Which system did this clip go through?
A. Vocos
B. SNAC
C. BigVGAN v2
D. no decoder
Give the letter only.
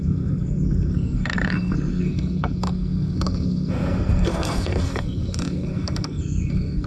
B